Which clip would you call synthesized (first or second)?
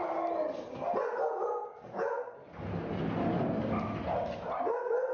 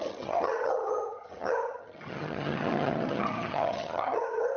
second